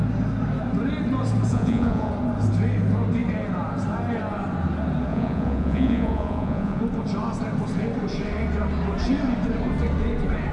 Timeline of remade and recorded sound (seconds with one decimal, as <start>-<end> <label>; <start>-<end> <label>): 0.0-1.5 recorded; 1.5-2.1 remade; 2.1-5.1 recorded; 5.1-6.8 remade; 6.8-10.5 recorded